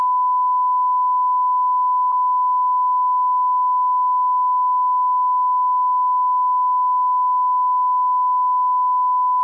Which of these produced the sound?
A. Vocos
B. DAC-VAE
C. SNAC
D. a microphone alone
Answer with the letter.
D